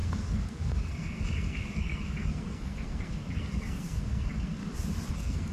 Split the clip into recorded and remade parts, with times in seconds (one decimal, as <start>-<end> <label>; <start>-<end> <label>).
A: 0.0-4.6 remade; 4.6-5.1 recorded; 5.1-5.5 remade

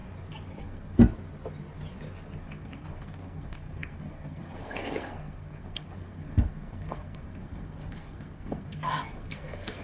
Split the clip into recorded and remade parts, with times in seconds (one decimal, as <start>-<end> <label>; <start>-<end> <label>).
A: 0.0-0.6 recorded; 0.6-1.0 remade; 1.0-2.4 recorded; 2.4-9.8 remade

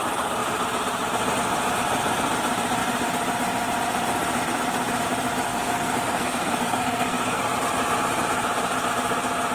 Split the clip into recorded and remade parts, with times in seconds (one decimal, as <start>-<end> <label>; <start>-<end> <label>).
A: 0.0-5.5 recorded; 5.5-7.4 remade; 7.4-9.5 recorded

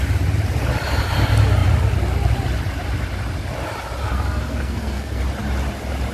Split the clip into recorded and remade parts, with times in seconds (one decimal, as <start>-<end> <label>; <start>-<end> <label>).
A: 0.0-4.0 recorded; 4.0-5.2 remade; 5.2-6.1 recorded